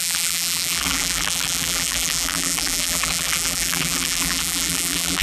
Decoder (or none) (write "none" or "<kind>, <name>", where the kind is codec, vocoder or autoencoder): vocoder, BigVGAN v2